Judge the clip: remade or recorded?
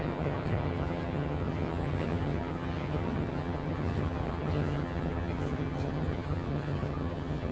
remade